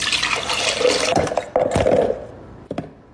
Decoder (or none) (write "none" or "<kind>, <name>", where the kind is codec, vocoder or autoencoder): none